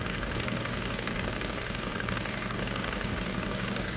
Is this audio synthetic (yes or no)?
yes